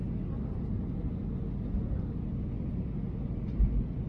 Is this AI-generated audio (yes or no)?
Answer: no